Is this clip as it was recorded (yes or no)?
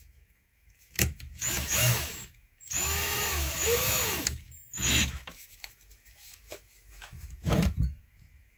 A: no